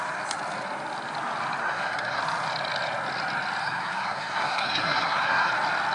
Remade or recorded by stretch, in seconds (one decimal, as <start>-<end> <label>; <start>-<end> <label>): 0.0-1.6 recorded; 1.6-2.2 remade; 2.2-3.6 recorded; 3.6-5.5 remade; 5.5-5.9 recorded